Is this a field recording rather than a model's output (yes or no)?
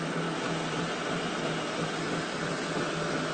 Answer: yes